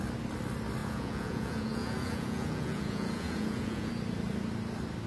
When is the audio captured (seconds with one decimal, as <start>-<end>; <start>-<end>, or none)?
0.0-0.8; 3.9-5.1